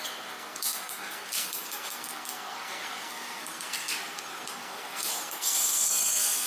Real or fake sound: fake